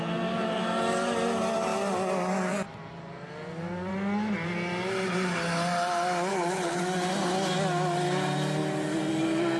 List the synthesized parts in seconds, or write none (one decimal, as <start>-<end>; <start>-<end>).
6.3-6.8